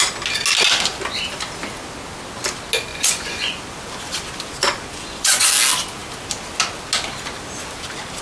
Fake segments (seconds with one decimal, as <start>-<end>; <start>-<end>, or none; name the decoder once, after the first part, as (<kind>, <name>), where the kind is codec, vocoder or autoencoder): 2.9-3.6 (vocoder, Vocos); 4.6-5.5